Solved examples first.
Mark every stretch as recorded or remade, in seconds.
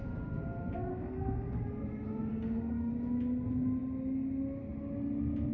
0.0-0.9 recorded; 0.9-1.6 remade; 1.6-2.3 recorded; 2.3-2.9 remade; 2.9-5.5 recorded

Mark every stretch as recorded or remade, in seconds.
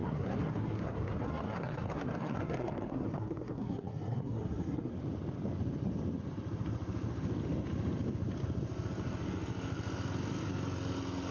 0.0-4.9 remade; 4.9-11.3 recorded